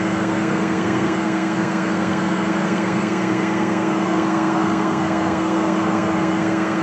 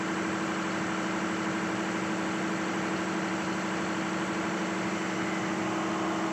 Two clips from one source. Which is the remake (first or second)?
first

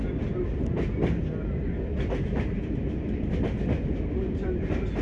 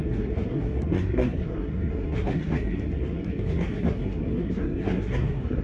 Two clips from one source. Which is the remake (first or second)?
second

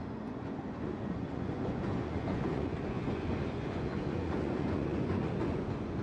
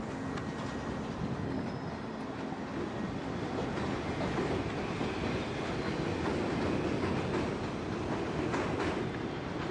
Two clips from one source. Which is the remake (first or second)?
first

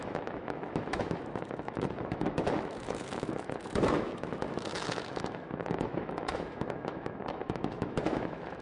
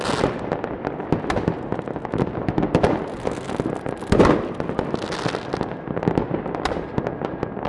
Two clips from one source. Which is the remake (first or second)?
first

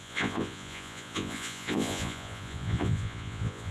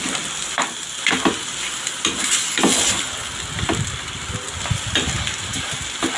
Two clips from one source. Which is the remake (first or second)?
first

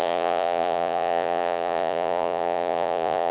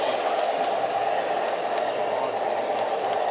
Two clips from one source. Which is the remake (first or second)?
first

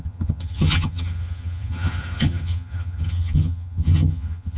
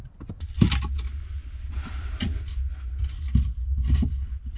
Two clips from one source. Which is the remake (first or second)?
first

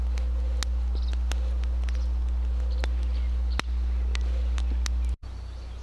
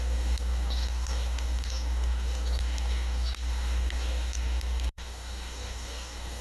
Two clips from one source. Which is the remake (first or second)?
second